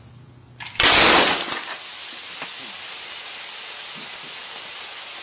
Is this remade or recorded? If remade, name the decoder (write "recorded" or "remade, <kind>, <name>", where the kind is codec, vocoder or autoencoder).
recorded